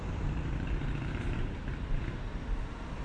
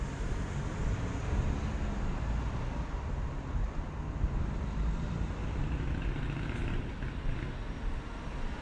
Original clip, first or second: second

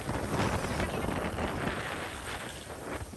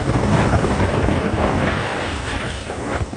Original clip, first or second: first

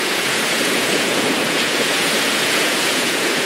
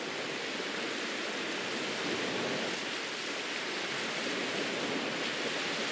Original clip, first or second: second